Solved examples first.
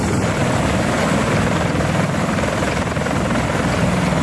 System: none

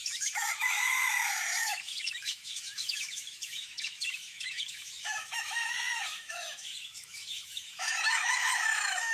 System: autoencoder, DAC-VAE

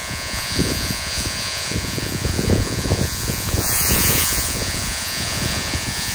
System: vocoder, Vocos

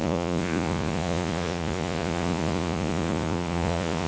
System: vocoder, Vocos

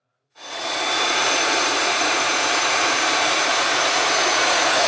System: vocoder, Vocos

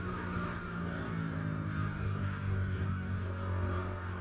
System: codec, DAC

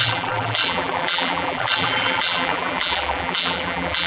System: vocoder, BigVGAN v2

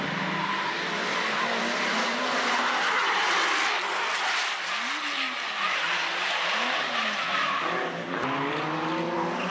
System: none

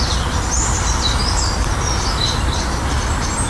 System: none